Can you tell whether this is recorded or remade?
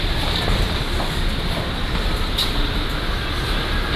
recorded